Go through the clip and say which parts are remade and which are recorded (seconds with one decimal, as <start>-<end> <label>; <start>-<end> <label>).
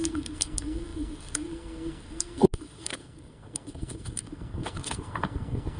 0.0-5.8 remade